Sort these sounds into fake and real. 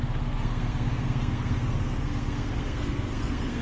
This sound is fake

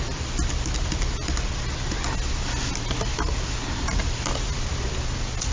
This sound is real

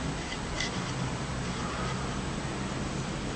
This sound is real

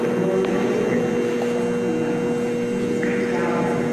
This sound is real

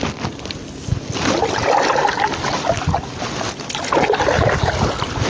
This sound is real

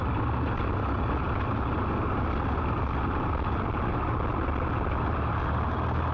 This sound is real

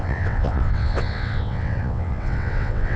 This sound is fake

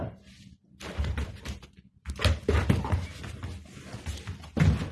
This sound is real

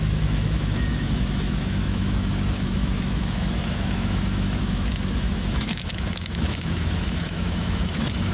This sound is fake